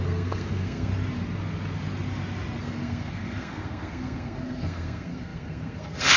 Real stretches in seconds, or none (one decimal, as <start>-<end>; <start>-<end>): 0.9-2.6